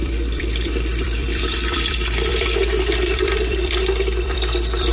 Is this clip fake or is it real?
fake